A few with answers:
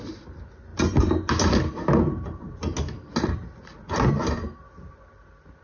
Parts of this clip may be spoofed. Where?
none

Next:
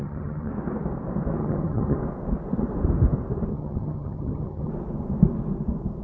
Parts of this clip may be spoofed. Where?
0.0-0.5 (vocoder, HiFi-GAN); 1.4-2.0; 3.5-4.7

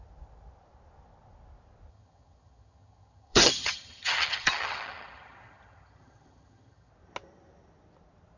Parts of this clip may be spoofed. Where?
1.9-6.9 (vocoder, HiFi-GAN)